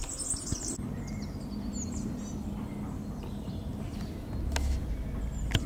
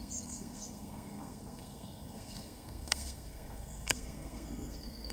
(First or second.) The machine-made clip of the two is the second